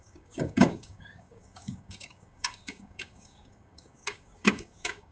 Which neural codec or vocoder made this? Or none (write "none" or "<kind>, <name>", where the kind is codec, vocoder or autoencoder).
codec, DAC